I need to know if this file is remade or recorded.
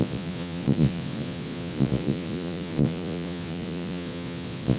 remade